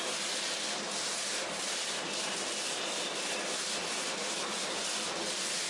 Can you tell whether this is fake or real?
real